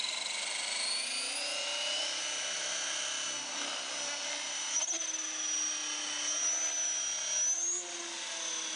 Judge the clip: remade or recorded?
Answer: recorded